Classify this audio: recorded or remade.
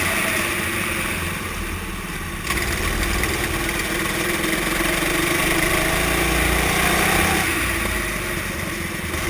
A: recorded